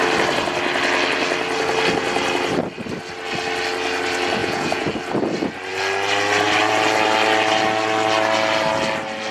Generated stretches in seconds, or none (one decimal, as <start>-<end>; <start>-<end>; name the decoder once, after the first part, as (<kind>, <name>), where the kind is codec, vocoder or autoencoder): 4.4-4.9 (vocoder, Vocos)